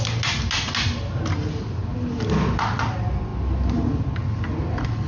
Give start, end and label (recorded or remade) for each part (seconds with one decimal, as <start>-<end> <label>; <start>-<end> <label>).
0.0-5.1 recorded